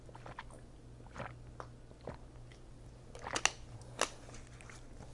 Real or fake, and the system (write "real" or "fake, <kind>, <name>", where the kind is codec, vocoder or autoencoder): real